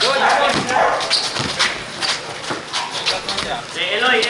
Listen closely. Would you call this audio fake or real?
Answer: real